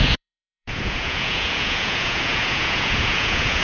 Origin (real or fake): fake